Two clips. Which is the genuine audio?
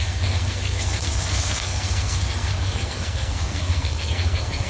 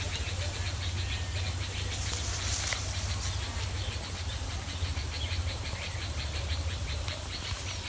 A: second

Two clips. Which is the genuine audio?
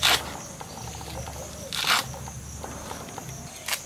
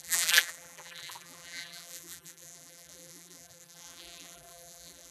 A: first